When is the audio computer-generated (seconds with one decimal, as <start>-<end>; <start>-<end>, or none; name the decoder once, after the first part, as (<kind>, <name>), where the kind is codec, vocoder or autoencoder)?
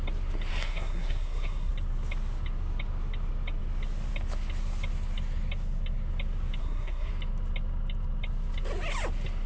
0.5-1.7 (codec, SNAC); 6.6-7.1